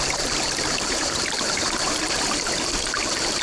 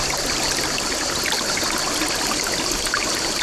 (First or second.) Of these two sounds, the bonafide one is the second